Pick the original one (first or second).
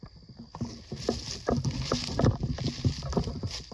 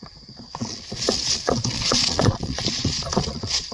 first